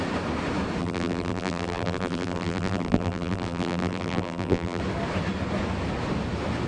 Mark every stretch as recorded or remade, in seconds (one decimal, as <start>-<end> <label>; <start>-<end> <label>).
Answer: 0.0-0.8 recorded; 0.8-4.8 remade; 4.8-6.7 recorded